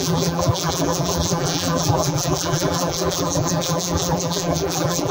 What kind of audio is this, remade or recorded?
remade